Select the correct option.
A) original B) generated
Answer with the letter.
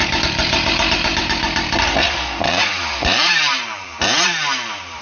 B